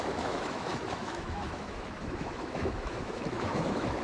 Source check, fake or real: fake